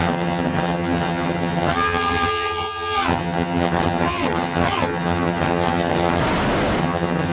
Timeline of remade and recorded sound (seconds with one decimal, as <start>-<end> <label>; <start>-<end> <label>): 0.0-6.2 remade; 6.2-6.8 recorded; 6.8-7.3 remade